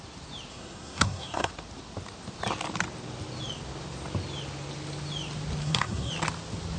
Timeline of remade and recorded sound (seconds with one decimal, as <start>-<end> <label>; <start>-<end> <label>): 0.0-0.5 recorded; 0.5-1.5 remade; 1.5-5.6 recorded; 5.6-6.1 remade; 6.1-6.8 recorded